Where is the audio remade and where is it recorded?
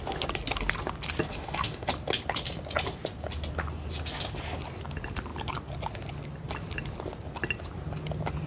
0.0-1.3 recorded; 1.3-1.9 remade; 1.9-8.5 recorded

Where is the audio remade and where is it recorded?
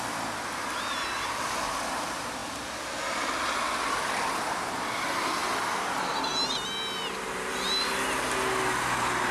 0.0-9.3 recorded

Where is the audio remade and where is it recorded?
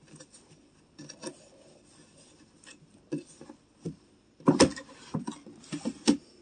0.0-6.4 recorded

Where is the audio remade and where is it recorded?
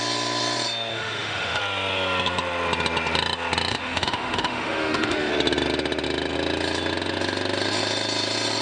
0.0-0.9 recorded; 0.9-1.6 remade; 1.6-3.7 recorded; 3.7-5.3 remade; 5.3-8.6 recorded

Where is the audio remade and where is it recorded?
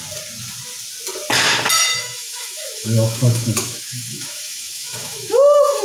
0.0-1.9 recorded; 1.9-5.8 remade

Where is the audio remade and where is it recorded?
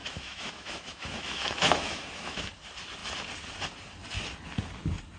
0.0-2.5 remade; 2.5-5.2 recorded